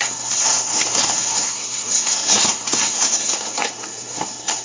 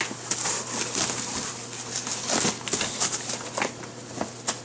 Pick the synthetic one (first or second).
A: first